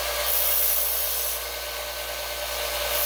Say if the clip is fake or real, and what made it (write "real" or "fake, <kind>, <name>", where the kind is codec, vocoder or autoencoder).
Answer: real